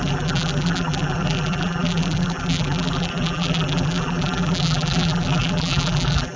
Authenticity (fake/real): fake